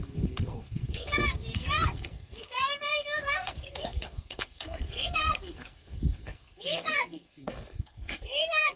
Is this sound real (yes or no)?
no